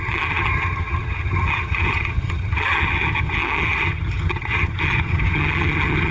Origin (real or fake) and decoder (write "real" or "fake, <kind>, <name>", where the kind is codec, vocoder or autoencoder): fake, vocoder, HiFi-GAN